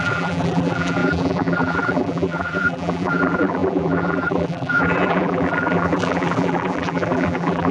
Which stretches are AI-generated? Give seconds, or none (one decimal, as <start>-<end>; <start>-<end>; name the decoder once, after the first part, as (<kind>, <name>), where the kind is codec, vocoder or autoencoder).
0.0-7.7 (vocoder, BigVGAN v2)